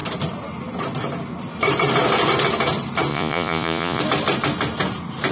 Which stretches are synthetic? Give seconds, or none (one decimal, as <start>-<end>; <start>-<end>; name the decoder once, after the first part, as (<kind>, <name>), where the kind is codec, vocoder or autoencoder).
3.1-4.0 (vocoder, Vocos)